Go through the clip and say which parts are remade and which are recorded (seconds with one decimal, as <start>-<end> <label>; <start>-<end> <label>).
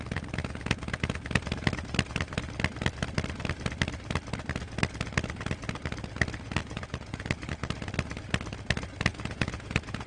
0.0-6.6 recorded; 6.6-7.5 remade; 7.5-9.1 recorded; 9.1-10.1 remade